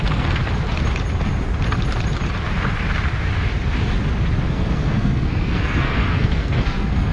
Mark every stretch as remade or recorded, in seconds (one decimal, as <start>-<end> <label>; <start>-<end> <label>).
0.0-0.4 remade; 0.4-4.5 recorded; 4.5-7.1 remade